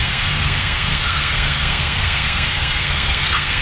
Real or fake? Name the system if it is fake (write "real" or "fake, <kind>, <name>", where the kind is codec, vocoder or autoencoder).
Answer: fake, codec, SNAC